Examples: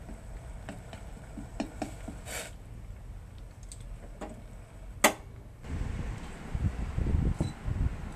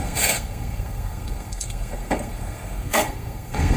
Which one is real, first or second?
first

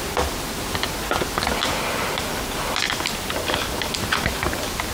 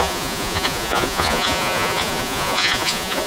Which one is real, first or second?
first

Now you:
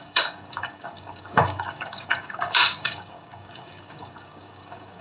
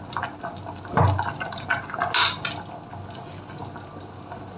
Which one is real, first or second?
second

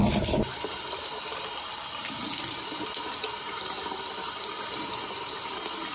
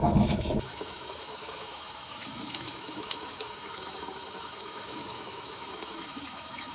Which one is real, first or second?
first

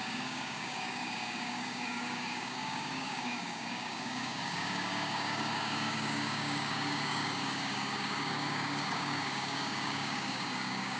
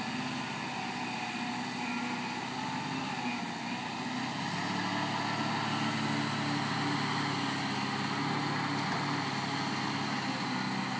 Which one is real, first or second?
second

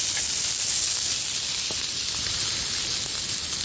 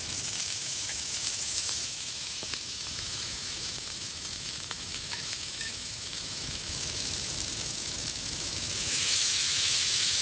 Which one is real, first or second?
first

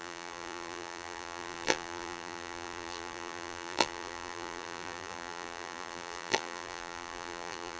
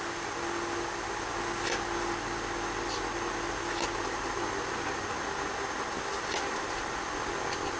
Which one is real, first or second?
second